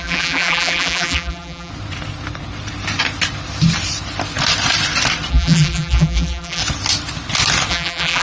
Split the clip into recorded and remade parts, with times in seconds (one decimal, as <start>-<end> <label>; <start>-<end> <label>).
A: 0.0-1.7 remade; 1.7-5.3 recorded; 5.3-6.6 remade; 6.6-7.7 recorded; 7.7-8.2 remade